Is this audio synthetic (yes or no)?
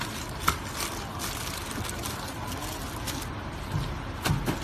no